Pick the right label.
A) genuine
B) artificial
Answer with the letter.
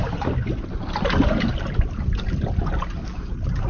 A